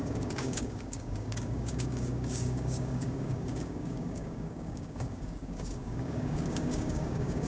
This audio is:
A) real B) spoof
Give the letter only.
B